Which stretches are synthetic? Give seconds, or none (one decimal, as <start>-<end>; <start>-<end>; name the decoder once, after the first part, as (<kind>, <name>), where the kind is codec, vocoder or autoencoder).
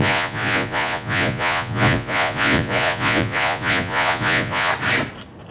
0.0-4.7 (vocoder, Vocos)